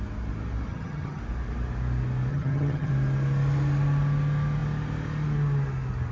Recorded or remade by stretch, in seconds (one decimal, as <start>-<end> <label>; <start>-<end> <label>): 0.0-0.7 recorded; 0.7-1.2 remade; 1.2-2.3 recorded; 2.3-2.9 remade; 2.9-6.1 recorded